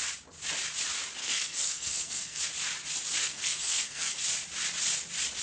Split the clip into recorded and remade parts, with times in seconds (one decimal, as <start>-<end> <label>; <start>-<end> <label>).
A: 0.0-1.2 recorded; 1.2-2.4 remade; 2.4-3.2 recorded; 3.2-4.2 remade; 4.2-5.4 recorded